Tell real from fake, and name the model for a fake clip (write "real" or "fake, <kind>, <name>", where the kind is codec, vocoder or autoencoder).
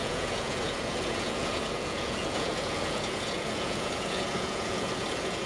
fake, vocoder, Vocos